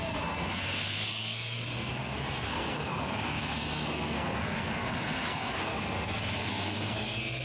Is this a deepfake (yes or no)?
yes